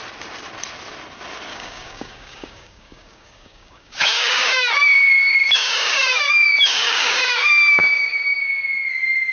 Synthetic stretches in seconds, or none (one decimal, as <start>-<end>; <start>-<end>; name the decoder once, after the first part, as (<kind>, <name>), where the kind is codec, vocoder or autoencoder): 1.5-4.7 (codec, DAC); 5.2-8.4